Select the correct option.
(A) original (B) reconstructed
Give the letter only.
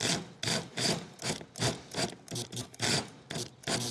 A